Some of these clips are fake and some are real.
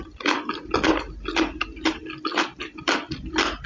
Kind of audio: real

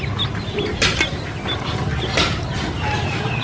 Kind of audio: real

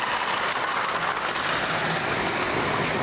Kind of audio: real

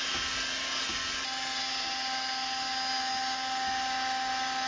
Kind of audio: real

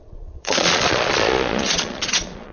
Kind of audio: fake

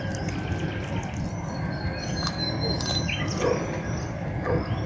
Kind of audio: real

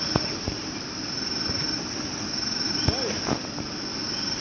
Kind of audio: real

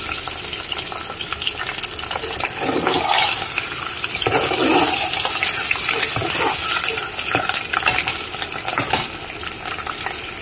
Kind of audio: real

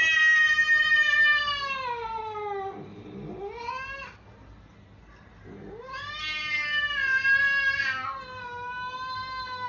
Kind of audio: real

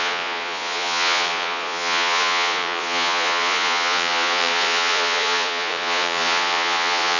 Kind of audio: fake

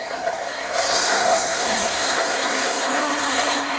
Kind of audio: fake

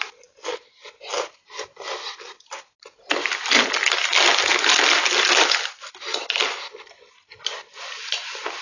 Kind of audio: real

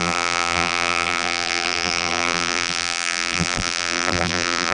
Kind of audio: fake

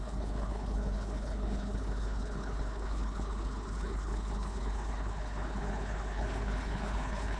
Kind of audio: fake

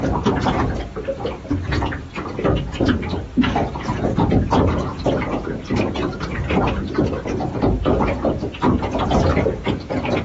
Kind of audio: real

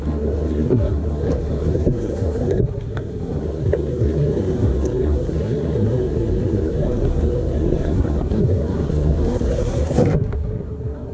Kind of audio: fake